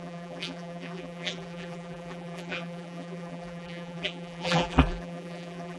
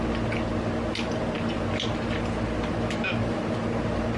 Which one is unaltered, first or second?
second